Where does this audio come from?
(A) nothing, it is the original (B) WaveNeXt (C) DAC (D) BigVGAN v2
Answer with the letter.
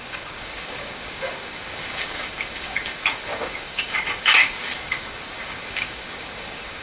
C